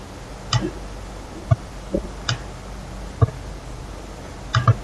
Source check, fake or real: real